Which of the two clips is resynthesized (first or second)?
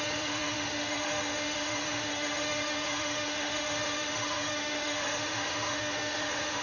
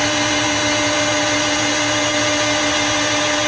first